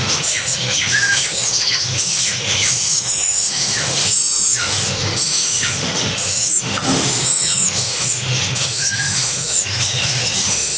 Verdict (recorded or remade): remade